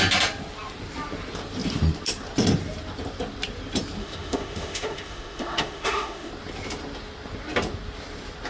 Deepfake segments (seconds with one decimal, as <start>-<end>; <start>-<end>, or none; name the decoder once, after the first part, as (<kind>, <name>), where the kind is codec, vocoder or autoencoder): 4.0-6.3 (autoencoder, DAC-VAE)